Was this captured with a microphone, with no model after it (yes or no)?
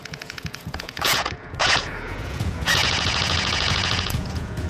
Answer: no